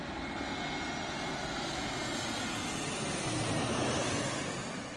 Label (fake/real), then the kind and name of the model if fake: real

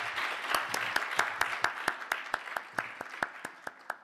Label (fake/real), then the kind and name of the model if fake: real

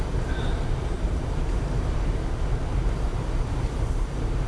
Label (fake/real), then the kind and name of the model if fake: fake, vocoder, BigVGAN v2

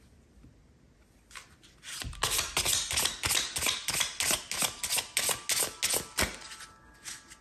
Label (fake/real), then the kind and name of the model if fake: real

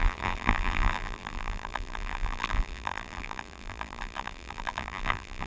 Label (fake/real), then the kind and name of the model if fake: fake, vocoder, BigVGAN v2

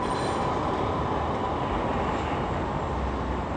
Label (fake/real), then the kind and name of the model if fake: real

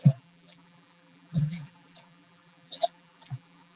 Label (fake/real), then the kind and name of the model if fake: fake, vocoder, BigVGAN v2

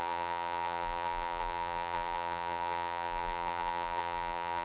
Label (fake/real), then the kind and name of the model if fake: fake, vocoder, BigVGAN v2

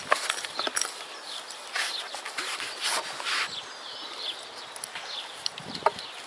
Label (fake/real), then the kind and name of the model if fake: fake, vocoder, BigVGAN v2